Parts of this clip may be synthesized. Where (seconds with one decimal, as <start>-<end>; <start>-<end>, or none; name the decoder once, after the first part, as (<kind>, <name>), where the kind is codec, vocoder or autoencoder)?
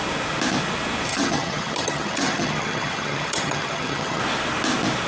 1.1-4.2 (vocoder, HiFi-GAN)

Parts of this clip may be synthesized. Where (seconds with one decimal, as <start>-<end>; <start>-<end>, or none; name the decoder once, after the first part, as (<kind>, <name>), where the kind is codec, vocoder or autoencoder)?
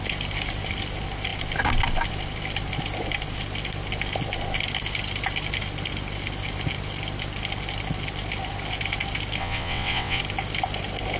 9.4-10.2 (vocoder, WaveNeXt)